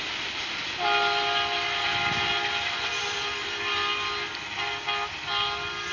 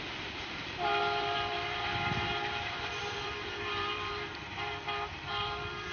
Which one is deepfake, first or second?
second